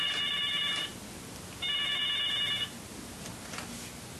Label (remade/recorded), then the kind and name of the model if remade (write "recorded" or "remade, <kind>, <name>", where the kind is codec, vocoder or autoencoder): recorded